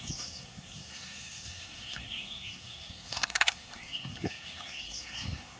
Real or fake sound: fake